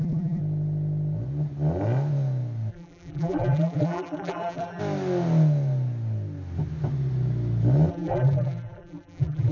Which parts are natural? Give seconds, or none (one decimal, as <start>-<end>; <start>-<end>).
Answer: 0.4-2.7; 4.8-7.9